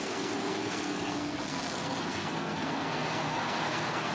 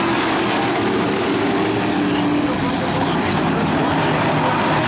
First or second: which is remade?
first